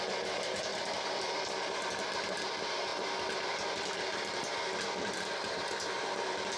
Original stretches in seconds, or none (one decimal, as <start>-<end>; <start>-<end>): 0.0-0.7; 2.0-2.9; 5.8-6.6